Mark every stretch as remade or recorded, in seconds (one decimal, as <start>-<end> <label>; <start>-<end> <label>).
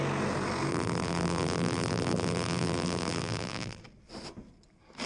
0.0-0.7 recorded; 0.7-3.8 remade; 3.8-5.1 recorded